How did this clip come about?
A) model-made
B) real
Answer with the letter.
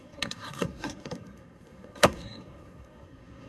A